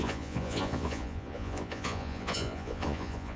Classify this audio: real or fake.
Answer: fake